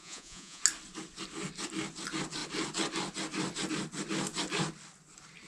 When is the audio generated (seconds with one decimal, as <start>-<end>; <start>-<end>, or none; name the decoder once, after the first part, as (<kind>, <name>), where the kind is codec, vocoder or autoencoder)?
0.0-0.6 (vocoder, Vocos)